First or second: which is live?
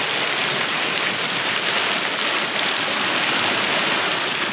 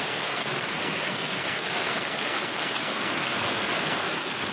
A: first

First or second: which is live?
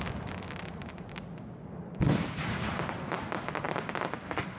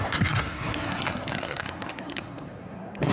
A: first